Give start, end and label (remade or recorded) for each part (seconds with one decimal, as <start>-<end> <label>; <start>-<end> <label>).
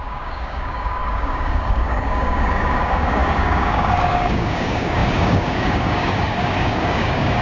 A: 0.0-7.4 remade